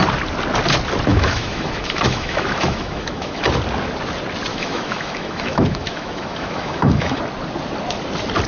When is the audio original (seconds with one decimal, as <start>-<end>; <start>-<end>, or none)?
0.0-1.1; 3.4-4.5; 7.2-8.5